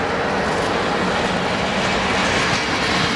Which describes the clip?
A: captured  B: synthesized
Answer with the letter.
A